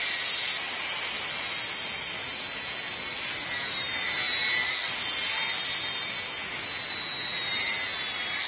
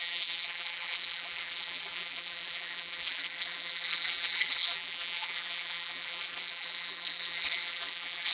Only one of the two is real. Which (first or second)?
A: first